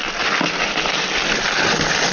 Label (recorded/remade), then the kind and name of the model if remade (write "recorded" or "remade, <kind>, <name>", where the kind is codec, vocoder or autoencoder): recorded